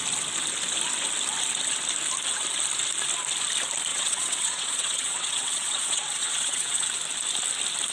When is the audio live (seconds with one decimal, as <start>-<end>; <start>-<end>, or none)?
0.0-3.9; 6.9-7.9